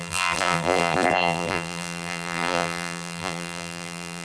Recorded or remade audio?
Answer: remade